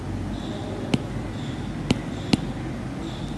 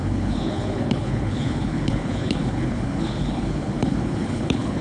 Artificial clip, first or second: second